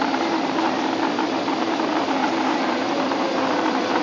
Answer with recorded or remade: remade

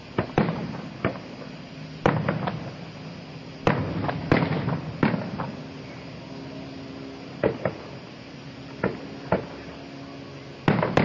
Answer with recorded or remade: recorded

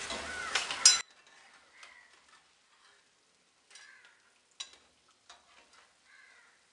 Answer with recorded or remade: recorded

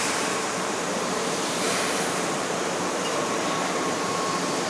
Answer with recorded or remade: remade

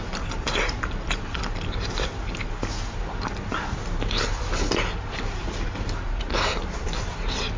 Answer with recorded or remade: recorded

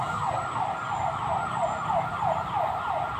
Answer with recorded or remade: recorded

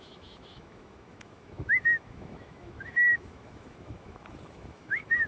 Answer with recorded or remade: remade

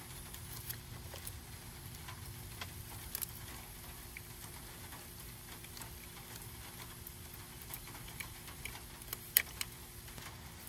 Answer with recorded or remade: recorded